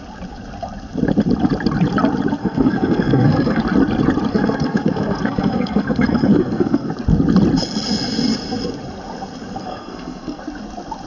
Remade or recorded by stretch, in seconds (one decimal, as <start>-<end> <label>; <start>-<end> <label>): 0.0-2.4 recorded; 2.4-3.6 remade; 3.6-4.3 recorded; 4.3-6.9 remade; 6.9-9.6 recorded; 9.6-10.4 remade; 10.4-11.1 recorded